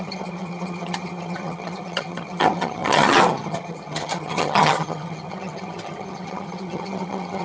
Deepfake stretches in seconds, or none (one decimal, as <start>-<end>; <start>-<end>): 0.0-7.4